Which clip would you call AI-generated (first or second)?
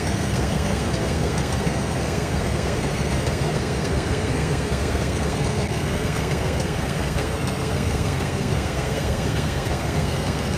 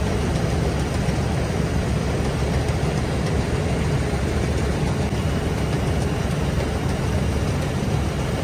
first